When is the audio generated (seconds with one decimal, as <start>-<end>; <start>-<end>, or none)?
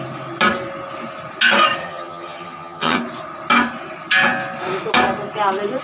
1.8-3.0